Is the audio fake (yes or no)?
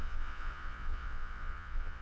yes